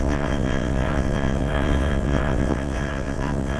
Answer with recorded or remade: remade